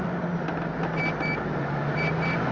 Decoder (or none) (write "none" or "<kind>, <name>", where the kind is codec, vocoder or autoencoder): none